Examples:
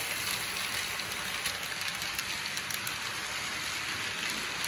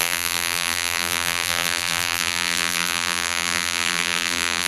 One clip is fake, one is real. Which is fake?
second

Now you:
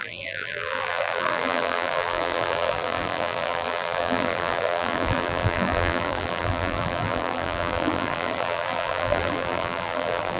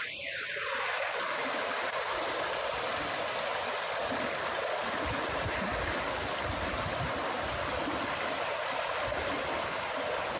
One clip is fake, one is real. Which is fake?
first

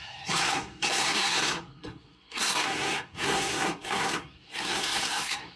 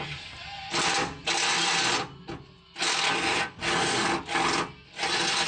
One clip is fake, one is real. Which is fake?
first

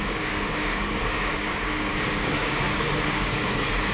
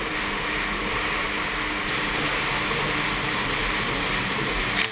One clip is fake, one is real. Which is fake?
first